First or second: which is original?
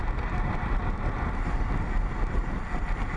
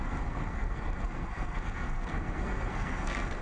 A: first